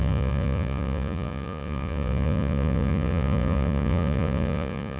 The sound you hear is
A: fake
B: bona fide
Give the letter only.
A